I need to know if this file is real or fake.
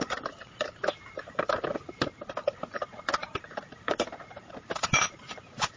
fake